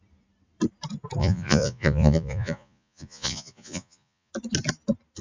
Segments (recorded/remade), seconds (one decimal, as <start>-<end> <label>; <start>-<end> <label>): 0.0-1.2 recorded; 1.2-4.3 remade; 4.3-5.2 recorded

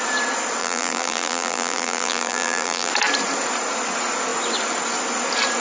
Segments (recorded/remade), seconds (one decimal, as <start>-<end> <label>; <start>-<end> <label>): 0.0-0.6 recorded; 0.6-2.9 remade; 2.9-5.6 recorded

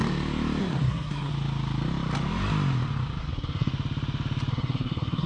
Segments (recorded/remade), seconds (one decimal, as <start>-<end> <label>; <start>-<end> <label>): 0.0-0.6 recorded; 0.6-1.3 remade; 1.3-3.2 recorded; 3.2-3.7 remade; 3.7-4.5 recorded; 4.5-5.3 remade